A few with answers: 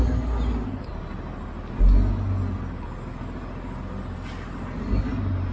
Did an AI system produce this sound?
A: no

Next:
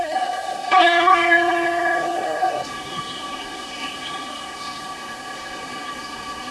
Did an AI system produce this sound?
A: yes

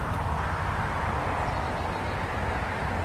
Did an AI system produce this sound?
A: no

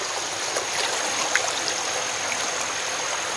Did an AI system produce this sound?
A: no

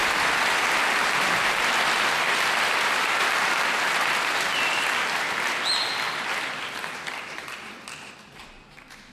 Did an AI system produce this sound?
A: no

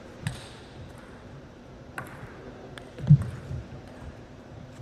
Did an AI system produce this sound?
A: yes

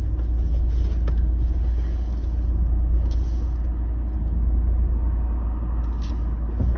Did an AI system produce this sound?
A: no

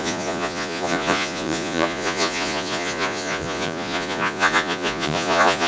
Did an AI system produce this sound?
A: yes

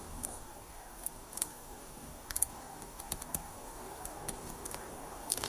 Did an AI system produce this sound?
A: yes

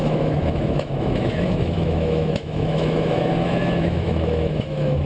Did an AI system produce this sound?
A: yes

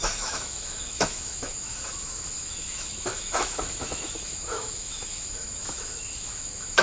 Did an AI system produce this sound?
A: yes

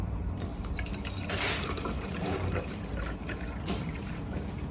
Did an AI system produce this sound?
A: yes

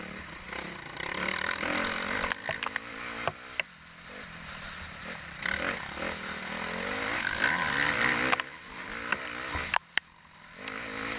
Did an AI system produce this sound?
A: no